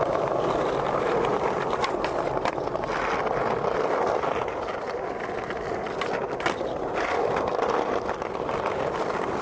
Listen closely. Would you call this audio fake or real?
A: real